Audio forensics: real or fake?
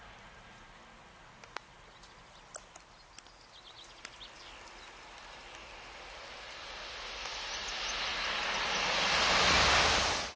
real